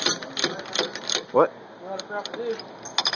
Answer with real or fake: real